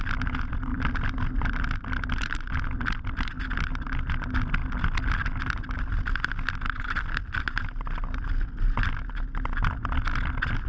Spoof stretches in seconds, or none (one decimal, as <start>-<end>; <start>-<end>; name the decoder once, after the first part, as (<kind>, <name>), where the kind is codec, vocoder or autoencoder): none